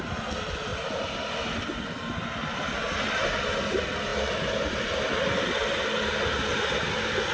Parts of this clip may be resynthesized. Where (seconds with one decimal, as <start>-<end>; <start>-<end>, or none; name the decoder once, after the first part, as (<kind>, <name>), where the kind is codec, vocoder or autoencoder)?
none